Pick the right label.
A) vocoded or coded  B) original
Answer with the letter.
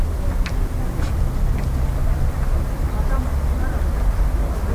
B